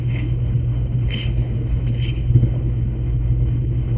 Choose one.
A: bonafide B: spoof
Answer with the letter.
B